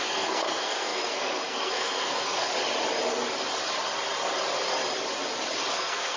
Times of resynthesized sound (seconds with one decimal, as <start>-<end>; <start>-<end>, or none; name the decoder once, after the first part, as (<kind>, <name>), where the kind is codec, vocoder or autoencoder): 0.0-2.5 (codec, SNAC); 5.7-6.2